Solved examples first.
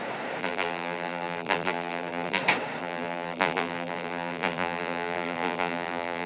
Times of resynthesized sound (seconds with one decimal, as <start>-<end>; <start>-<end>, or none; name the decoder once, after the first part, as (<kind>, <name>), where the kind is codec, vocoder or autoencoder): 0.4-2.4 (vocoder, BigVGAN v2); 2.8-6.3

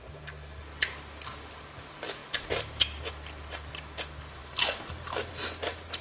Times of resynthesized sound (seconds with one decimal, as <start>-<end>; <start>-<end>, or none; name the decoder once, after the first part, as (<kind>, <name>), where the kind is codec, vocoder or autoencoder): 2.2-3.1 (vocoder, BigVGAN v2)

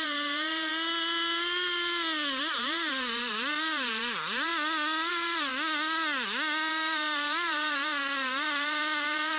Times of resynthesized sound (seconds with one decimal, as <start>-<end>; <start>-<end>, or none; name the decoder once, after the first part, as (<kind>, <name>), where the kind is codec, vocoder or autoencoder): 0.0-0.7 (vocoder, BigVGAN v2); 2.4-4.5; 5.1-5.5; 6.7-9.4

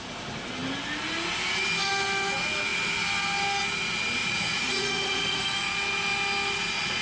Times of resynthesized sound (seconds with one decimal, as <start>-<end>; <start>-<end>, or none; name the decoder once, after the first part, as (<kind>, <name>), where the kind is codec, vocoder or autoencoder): 4.2-5.4 (vocoder, Vocos)

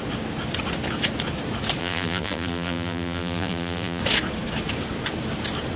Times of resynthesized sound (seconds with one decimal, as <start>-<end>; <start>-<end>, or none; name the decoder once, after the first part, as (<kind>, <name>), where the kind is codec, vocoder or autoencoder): 1.8-4.0 (vocoder, BigVGAN v2)

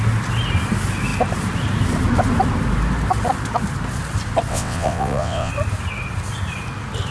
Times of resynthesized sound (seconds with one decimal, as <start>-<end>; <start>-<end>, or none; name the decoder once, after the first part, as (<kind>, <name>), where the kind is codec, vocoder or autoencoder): 4.5-5.5 (vocoder, WaveNeXt)

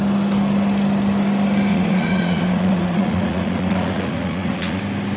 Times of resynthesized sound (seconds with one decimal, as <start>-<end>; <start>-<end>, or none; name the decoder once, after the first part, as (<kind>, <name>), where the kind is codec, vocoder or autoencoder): 1.7-4.8 (vocoder, Vocos)